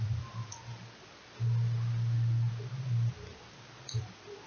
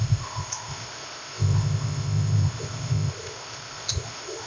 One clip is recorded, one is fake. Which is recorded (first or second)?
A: first